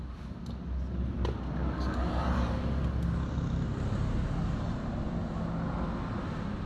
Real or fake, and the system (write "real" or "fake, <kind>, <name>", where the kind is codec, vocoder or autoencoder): real